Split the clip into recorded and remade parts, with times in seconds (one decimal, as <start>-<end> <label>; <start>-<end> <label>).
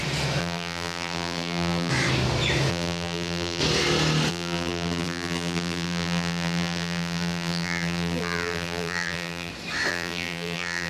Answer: 0.0-0.4 recorded; 0.4-1.9 remade; 1.9-2.7 recorded; 2.7-3.6 remade; 3.6-4.3 recorded; 4.3-9.5 remade; 9.5-9.9 recorded; 9.9-10.9 remade